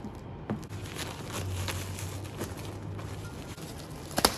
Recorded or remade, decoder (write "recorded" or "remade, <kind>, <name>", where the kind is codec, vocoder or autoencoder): recorded